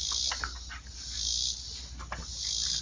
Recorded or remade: recorded